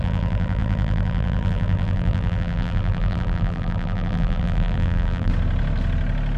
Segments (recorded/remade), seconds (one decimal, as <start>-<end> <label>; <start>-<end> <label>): 0.0-5.3 remade; 5.3-6.4 recorded